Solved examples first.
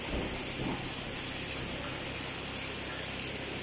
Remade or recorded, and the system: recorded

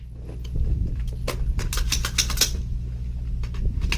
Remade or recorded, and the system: recorded